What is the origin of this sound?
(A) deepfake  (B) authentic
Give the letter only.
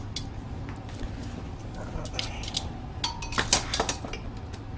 B